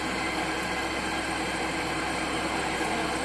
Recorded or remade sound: remade